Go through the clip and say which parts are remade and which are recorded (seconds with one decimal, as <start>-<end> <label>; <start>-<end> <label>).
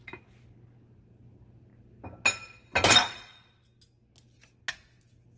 0.0-5.4 recorded